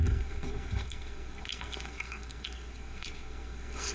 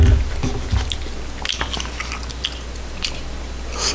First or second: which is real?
second